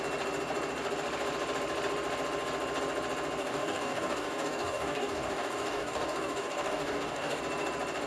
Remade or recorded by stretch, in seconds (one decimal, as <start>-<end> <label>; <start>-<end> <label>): 0.0-3.4 recorded; 3.4-7.4 remade; 7.4-8.1 recorded